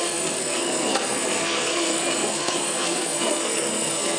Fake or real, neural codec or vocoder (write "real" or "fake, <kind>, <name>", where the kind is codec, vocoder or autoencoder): fake, codec, SNAC